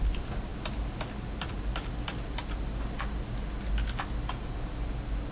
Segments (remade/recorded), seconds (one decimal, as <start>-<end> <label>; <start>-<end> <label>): 0.0-5.3 recorded